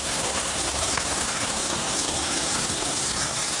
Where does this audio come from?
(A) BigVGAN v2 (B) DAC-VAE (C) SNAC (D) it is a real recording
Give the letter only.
C